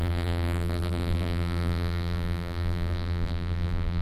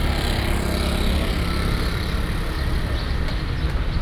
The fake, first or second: first